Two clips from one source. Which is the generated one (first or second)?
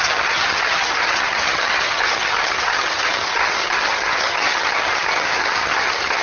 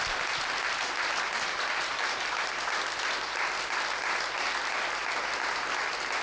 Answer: first